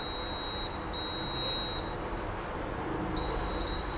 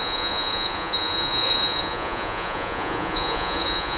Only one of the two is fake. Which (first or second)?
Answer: second